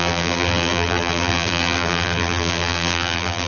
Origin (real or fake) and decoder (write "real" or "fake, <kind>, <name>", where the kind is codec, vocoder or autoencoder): fake, vocoder, BigVGAN v2